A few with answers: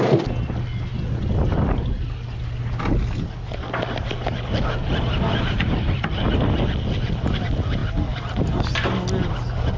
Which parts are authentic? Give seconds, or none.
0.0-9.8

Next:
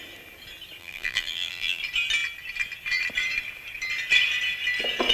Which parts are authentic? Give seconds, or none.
0.0-0.8; 1.8-5.1

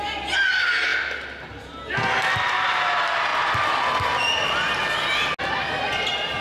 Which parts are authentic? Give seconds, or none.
0.0-6.4

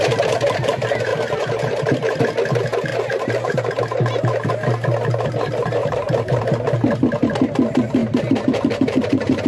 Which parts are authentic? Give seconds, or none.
0.0-1.1; 2.2-2.9; 3.8-5.8; 6.4-8.0

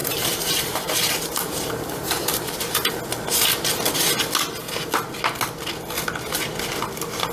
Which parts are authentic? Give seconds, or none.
3.0-7.3

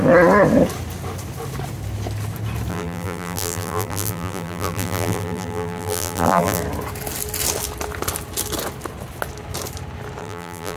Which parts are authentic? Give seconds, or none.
0.0-2.7; 6.6-10.2

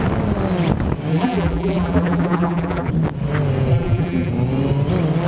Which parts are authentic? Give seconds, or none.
0.0-1.1; 2.9-3.7; 4.3-5.3